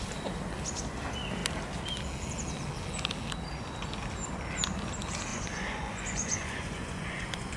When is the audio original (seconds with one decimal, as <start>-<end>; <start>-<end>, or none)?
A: 0.0-5.3